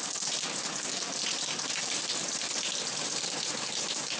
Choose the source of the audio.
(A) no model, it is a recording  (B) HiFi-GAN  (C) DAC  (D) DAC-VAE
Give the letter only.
A